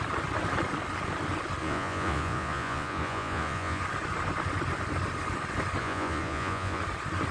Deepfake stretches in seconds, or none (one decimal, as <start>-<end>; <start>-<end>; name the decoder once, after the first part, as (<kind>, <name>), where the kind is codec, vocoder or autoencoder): 1.6-3.8 (vocoder, Vocos); 5.8-6.8